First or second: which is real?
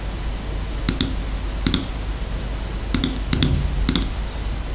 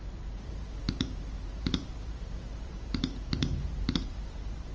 first